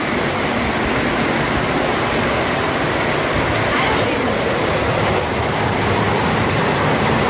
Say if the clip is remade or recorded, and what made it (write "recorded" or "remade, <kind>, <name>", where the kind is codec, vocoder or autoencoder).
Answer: recorded